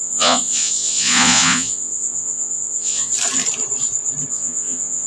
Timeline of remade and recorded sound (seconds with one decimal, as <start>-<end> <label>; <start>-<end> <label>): 0.0-3.1 remade; 3.1-4.3 recorded; 4.3-5.1 remade